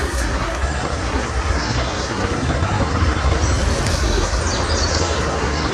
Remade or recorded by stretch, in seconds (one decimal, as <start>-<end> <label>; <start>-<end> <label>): 0.0-3.4 remade; 3.4-3.9 recorded; 3.9-4.4 remade; 4.4-4.9 recorded; 4.9-5.7 remade